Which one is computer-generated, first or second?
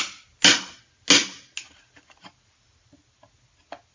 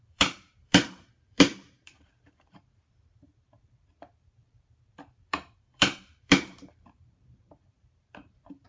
second